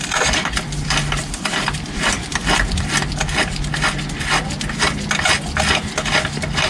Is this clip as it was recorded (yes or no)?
yes